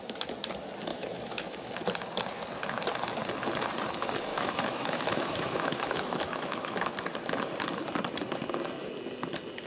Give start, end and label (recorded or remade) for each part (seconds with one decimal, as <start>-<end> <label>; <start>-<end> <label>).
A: 0.0-0.9 recorded; 0.9-1.7 remade; 1.7-4.3 recorded; 4.3-6.9 remade; 6.9-9.7 recorded